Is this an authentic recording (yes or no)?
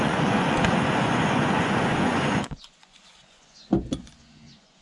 no